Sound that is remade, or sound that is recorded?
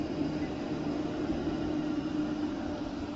recorded